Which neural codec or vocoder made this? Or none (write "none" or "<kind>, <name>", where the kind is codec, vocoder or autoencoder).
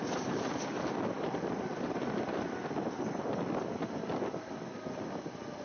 none